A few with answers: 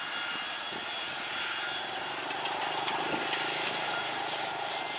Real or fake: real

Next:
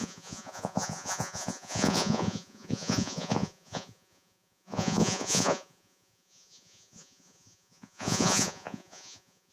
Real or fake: fake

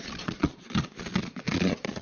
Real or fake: fake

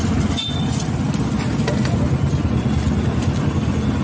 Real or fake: real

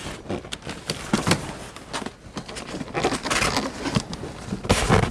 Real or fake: real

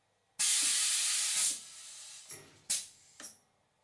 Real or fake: real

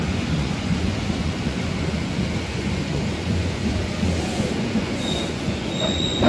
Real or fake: fake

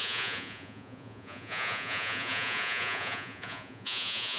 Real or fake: fake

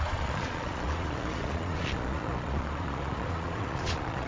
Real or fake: fake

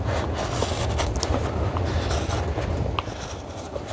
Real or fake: real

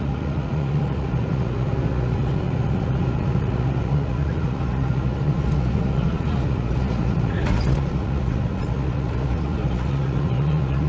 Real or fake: fake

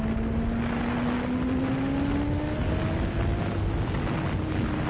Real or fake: real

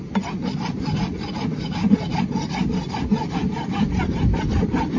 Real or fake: real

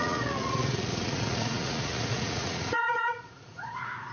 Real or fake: fake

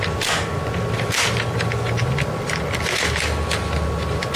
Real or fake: real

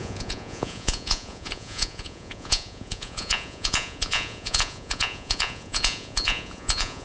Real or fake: fake